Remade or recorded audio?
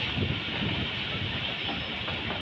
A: recorded